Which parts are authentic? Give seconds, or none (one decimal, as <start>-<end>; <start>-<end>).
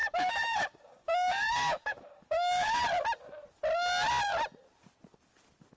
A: 2.8-5.8